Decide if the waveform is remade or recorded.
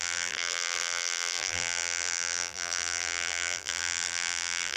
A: remade